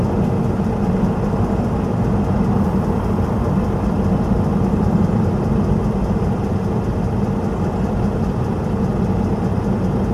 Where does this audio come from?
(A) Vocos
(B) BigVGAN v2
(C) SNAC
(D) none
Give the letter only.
D